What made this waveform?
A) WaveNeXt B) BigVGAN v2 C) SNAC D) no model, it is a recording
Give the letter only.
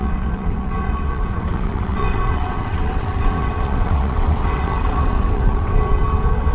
A